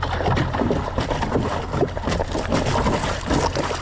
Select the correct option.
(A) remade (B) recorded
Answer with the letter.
B